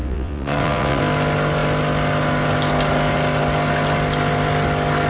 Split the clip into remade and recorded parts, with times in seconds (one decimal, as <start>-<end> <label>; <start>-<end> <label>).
0.0-1.0 remade; 1.0-5.1 recorded

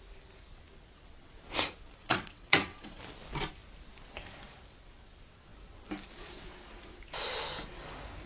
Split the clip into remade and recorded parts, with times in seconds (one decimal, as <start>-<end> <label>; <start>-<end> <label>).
0.0-2.0 recorded; 2.0-3.0 remade; 3.0-8.3 recorded

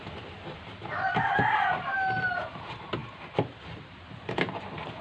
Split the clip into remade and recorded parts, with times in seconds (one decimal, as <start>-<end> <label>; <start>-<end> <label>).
0.0-5.0 recorded

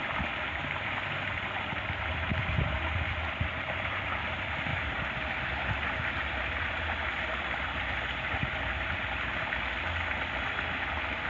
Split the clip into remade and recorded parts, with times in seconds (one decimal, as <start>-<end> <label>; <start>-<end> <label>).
0.0-11.3 recorded

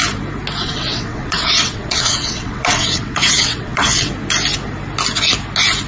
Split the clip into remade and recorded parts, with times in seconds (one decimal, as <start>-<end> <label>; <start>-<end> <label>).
0.0-0.6 recorded; 0.6-4.1 remade; 4.1-5.9 recorded

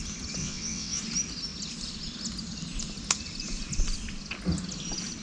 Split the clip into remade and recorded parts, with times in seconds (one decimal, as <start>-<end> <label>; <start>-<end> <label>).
0.0-0.4 recorded; 0.4-1.0 remade; 1.0-5.2 recorded

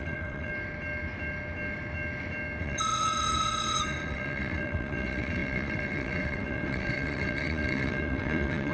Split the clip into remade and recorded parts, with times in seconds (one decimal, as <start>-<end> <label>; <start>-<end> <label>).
0.0-0.5 remade; 0.5-2.6 recorded; 2.6-8.7 remade